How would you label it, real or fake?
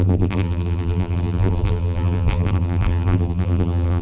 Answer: fake